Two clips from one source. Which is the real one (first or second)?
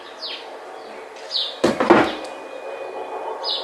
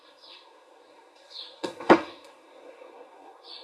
first